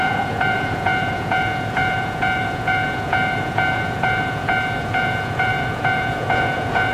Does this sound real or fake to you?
fake